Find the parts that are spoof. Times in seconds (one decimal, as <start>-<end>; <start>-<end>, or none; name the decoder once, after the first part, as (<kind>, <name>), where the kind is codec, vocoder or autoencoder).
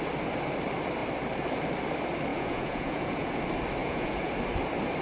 2.3-3.4 (vocoder, Vocos); 3.8-4.3